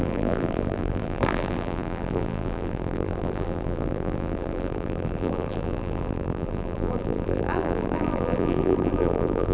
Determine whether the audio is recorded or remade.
remade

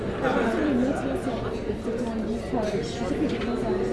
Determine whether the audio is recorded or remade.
recorded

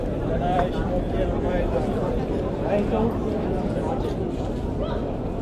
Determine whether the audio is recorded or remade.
remade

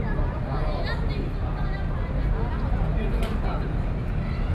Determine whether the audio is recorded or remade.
recorded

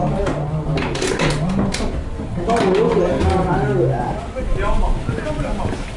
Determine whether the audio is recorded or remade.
recorded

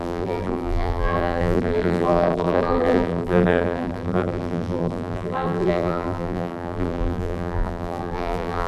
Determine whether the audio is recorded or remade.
remade